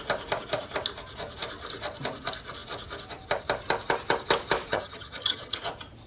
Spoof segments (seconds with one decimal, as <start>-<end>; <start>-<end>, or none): 4.7-5.6